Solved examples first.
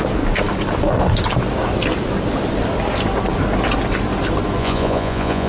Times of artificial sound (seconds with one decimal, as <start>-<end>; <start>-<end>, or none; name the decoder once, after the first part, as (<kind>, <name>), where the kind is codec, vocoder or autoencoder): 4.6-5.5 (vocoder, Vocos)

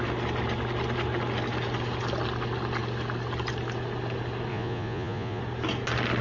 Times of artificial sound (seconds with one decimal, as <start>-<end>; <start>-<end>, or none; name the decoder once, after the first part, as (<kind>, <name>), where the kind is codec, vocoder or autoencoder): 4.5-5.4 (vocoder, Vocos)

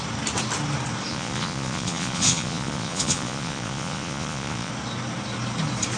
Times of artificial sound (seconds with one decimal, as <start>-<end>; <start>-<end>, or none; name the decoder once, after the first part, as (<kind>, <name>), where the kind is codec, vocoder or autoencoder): 1.1-4.7 (vocoder, Vocos)

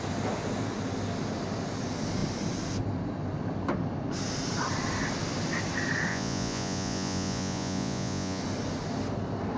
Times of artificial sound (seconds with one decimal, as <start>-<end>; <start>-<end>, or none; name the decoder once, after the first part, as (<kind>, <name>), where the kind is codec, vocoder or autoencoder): 6.1-8.4 (vocoder, Vocos)